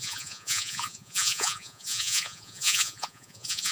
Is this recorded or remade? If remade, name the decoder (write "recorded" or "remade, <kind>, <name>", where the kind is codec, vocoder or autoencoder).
remade, vocoder, Vocos